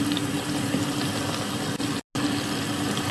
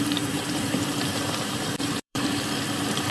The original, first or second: first